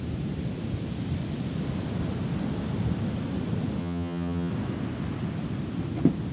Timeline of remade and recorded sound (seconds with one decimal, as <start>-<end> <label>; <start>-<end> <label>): 0.0-3.8 recorded; 3.8-4.5 remade; 4.5-6.3 recorded